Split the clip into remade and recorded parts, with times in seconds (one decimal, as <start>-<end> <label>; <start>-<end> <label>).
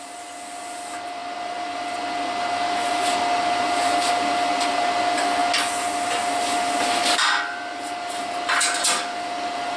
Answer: 0.0-9.8 recorded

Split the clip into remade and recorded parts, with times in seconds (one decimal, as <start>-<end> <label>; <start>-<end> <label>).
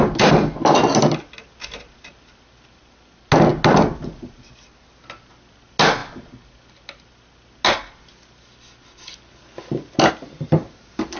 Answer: 0.0-11.2 recorded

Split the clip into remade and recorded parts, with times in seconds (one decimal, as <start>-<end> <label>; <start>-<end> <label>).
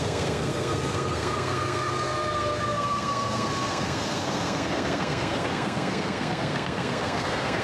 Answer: 0.0-7.6 remade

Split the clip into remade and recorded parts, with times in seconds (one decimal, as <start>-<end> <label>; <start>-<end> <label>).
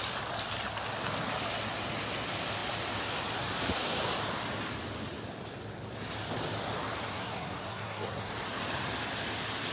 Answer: 0.0-7.1 recorded; 7.1-8.3 remade; 8.3-9.7 recorded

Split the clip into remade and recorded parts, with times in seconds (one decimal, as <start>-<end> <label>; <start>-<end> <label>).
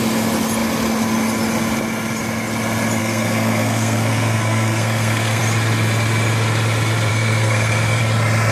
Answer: 0.0-3.0 recorded; 3.0-5.4 remade; 5.4-7.1 recorded; 7.1-8.0 remade; 8.0-8.5 recorded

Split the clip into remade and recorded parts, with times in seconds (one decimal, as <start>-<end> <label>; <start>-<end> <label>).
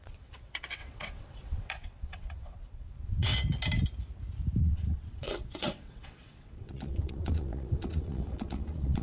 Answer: 0.0-3.3 remade; 3.3-4.6 recorded; 4.6-9.0 remade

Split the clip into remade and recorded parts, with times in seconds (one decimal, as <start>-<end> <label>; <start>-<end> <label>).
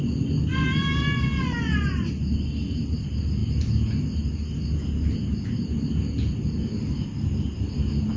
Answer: 0.0-8.2 recorded